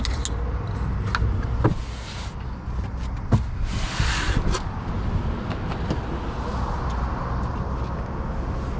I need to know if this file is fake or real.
real